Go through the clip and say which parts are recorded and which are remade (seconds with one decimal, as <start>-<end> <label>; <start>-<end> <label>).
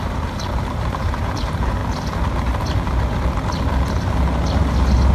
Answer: 0.0-1.8 remade; 1.8-5.1 recorded